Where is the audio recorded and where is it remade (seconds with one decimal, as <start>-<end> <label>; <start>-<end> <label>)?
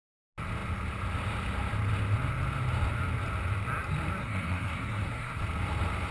0.0-4.2 recorded; 4.2-5.4 remade; 5.4-6.1 recorded